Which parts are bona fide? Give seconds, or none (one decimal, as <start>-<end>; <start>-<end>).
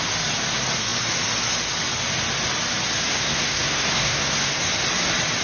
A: 0.0-3.1; 4.6-5.4